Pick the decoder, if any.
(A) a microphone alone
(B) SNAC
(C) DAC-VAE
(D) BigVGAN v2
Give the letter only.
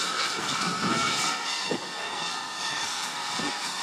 B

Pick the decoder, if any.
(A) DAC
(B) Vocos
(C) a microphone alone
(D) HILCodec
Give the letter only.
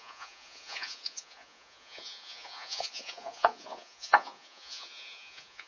B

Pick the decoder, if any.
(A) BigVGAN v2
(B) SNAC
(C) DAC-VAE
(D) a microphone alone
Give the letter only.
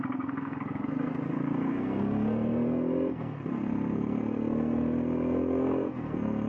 B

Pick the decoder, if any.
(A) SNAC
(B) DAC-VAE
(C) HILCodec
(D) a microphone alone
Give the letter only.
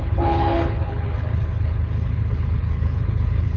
C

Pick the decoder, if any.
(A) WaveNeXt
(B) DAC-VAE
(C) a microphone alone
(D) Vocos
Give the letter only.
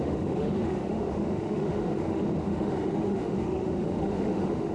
B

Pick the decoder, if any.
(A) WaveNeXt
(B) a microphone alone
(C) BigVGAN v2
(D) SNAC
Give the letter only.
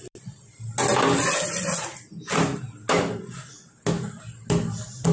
B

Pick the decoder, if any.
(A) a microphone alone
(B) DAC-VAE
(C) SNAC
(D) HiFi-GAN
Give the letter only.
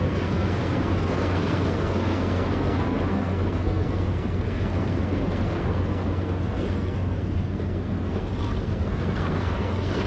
C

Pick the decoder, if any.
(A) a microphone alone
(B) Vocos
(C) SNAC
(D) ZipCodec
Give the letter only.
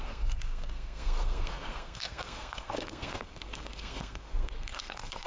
C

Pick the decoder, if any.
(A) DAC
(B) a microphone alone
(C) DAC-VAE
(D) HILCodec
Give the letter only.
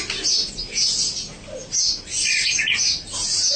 B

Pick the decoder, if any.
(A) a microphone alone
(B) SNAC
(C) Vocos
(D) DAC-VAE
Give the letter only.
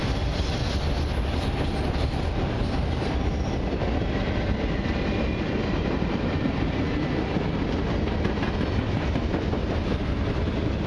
A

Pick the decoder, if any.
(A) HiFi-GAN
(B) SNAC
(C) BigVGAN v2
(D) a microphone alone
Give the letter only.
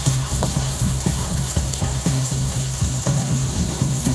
B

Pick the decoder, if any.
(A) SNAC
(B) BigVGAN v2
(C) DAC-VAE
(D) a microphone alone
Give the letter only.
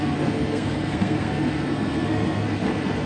A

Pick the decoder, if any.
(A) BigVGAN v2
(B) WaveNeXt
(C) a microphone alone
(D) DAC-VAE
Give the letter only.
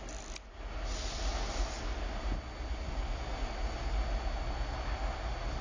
C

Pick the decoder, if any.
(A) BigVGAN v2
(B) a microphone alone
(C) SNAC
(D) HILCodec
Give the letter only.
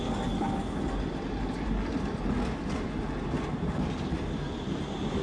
B